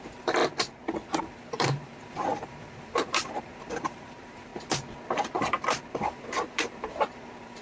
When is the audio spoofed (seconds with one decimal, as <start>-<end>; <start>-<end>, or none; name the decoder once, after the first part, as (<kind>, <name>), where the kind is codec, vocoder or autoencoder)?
0.0-0.4 (vocoder, BigVGAN v2); 1.2-4.5; 5.4-7.6

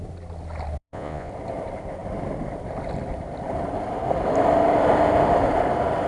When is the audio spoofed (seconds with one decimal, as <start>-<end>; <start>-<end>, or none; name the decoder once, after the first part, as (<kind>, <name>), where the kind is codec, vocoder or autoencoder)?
0.8-1.3 (vocoder, Vocos)